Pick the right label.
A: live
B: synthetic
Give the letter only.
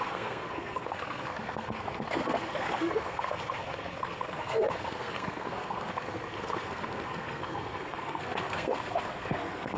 B